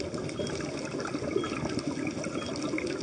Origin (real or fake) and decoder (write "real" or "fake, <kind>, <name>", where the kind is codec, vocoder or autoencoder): real